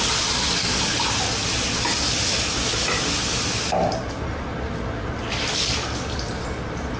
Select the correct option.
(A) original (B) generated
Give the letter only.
A